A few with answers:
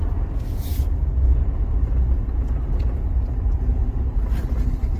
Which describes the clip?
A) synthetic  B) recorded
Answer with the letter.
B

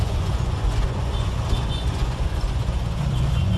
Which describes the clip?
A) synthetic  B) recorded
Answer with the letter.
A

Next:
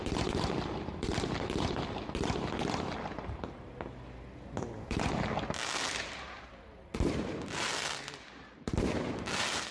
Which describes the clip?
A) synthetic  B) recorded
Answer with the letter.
B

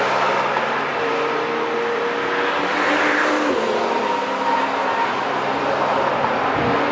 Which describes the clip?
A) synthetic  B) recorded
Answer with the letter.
B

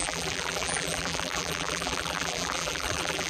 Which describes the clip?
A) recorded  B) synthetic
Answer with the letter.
B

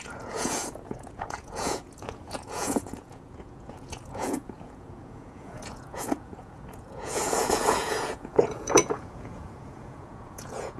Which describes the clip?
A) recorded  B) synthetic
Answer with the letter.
B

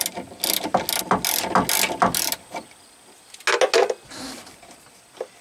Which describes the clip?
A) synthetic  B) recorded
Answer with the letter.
B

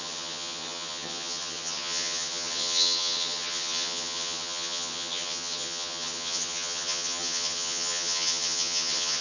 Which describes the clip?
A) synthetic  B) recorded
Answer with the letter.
A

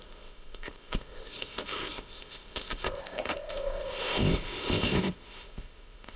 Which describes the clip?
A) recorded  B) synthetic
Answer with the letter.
B